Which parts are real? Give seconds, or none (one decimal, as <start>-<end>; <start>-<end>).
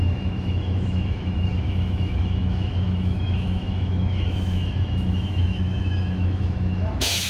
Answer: none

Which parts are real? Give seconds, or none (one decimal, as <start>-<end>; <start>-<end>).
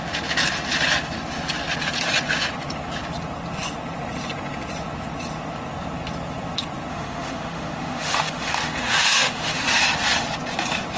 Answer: 0.0-6.9; 9.8-11.0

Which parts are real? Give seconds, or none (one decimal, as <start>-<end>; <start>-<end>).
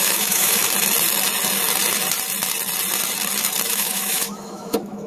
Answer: 0.6-3.7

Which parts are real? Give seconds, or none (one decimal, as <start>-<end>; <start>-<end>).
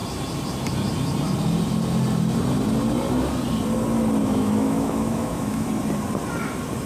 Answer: 0.0-4.2; 5.7-6.9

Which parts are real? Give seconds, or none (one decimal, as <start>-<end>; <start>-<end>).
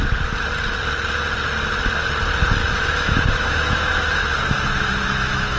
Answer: 0.0-2.6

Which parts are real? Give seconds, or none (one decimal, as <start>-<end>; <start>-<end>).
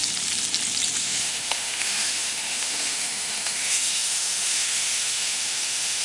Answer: 0.0-1.0